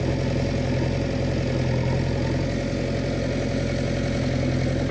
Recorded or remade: recorded